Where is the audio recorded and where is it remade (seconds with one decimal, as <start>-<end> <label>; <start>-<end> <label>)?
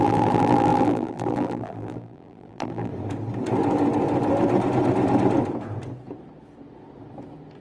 0.0-2.9 remade; 2.9-7.6 recorded